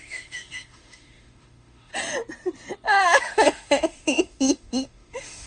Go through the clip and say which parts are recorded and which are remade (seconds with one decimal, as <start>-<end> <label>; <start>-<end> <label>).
0.0-1.9 remade; 1.9-3.2 recorded; 3.2-5.5 remade

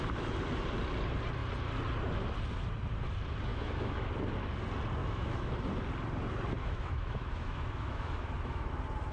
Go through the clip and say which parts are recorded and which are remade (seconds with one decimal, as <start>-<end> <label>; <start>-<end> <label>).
0.0-3.5 recorded; 3.5-4.1 remade; 4.1-5.0 recorded; 5.0-5.5 remade; 5.5-6.6 recorded; 6.6-8.7 remade; 8.7-9.1 recorded

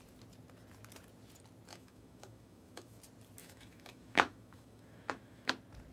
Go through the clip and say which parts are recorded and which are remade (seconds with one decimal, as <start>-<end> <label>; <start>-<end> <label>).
0.0-1.7 recorded; 1.7-3.0 remade; 3.0-3.4 recorded; 3.4-5.5 remade; 5.5-5.9 recorded

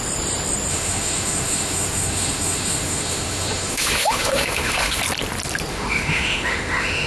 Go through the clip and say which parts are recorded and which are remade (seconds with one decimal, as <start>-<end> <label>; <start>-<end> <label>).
0.0-0.7 recorded; 0.7-5.0 remade; 5.0-5.7 recorded; 5.7-7.1 remade